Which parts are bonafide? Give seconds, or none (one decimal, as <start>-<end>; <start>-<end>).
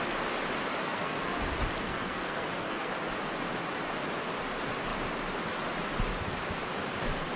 0.0-0.8; 1.4-1.8; 2.9-7.4